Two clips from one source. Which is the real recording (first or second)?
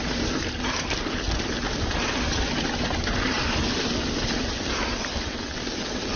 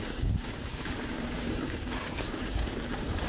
first